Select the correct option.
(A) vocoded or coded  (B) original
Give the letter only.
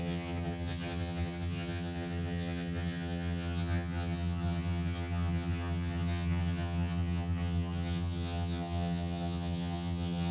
A